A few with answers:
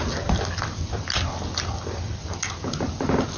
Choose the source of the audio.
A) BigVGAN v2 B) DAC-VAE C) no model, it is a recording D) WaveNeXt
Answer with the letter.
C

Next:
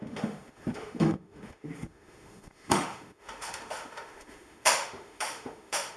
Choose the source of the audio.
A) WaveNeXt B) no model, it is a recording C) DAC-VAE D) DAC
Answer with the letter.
C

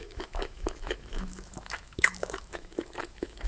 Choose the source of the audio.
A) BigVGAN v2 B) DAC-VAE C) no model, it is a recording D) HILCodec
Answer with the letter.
B